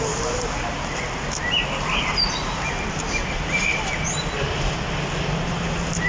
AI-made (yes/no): no